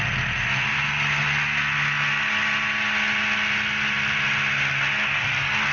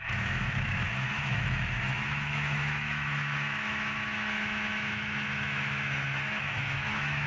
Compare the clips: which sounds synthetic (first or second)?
second